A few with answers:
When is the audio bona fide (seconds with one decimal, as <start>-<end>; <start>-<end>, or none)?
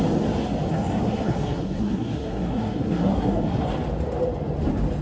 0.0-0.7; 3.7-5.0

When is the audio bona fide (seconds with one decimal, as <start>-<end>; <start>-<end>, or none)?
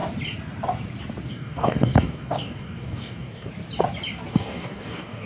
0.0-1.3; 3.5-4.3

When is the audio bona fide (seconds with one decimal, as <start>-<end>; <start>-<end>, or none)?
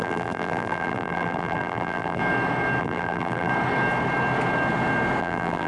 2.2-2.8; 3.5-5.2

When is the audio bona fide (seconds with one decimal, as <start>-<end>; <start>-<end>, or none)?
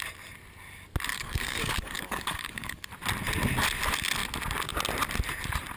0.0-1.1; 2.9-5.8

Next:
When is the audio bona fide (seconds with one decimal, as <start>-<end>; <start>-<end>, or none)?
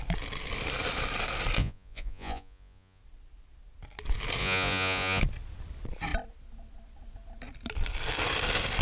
0.0-1.6; 3.0-4.4; 5.2-8.8